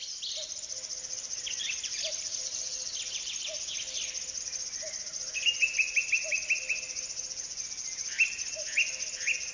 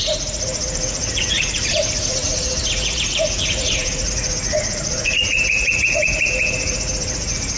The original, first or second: first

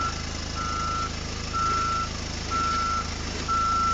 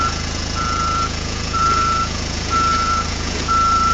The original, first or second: first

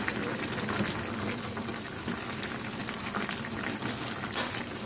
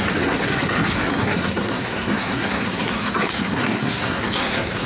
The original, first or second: first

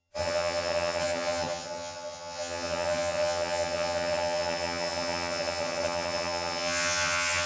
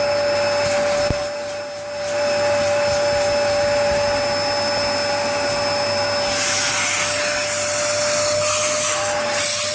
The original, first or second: second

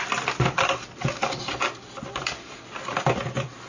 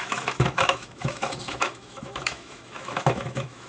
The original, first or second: first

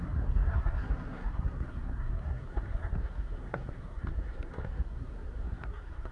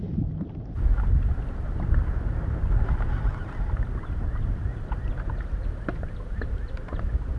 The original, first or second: second